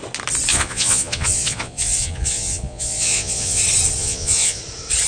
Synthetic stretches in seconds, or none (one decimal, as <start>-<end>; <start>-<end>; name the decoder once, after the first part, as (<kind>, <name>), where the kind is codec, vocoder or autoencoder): 0.5-3.6 (vocoder, Vocos); 4.0-4.6